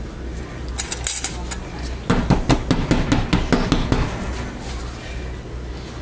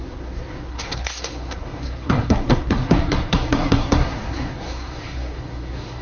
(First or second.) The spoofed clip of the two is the second